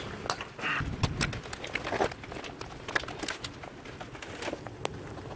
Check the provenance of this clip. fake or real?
real